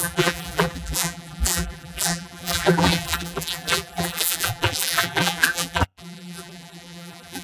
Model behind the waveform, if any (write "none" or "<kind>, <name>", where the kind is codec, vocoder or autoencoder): vocoder, BigVGAN v2